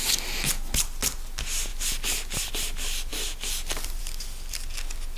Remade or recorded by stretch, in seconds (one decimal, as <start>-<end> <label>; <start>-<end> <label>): 0.0-5.2 recorded